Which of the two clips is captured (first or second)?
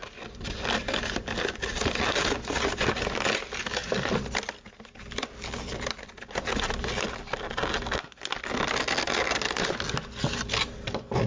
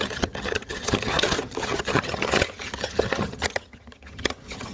first